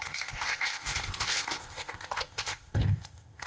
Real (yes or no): no